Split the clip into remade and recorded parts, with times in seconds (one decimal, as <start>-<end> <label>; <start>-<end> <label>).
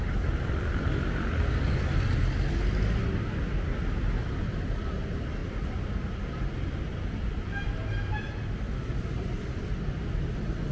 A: 0.0-10.7 recorded